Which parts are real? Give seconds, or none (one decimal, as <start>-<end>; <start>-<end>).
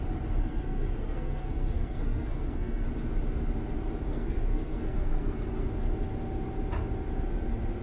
0.0-0.4; 2.9-4.1; 5.7-7.8